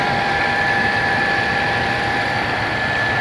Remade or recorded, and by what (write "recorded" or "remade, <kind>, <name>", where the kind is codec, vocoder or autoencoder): remade, vocoder, BigVGAN v2